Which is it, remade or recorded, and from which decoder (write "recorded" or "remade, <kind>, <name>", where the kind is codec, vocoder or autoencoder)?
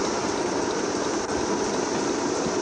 recorded